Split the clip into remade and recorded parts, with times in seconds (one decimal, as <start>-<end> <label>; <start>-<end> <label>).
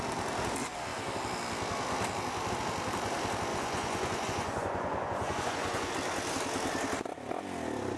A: 0.0-3.5 recorded; 3.5-5.9 remade; 5.9-8.0 recorded